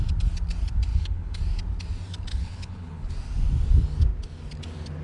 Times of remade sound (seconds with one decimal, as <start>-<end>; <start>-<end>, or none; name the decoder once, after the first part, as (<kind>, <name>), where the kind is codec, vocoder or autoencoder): 0.9-1.4 (codec, HILCodec); 2.3-3.1